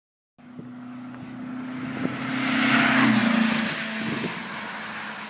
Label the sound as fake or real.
real